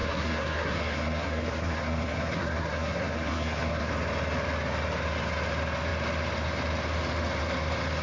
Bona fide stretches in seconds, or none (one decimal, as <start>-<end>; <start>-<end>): 3.9-8.0